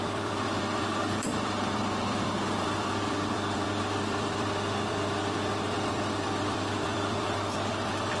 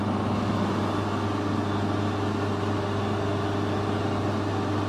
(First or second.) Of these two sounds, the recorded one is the second